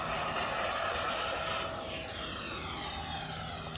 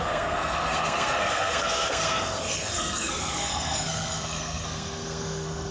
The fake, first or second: second